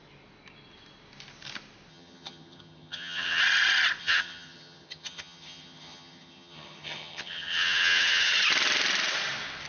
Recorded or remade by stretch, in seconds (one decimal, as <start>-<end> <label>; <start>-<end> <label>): 0.0-1.9 recorded; 1.9-3.4 remade; 3.4-4.0 recorded; 4.0-8.3 remade; 8.3-9.7 recorded